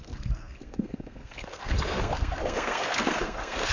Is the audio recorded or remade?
remade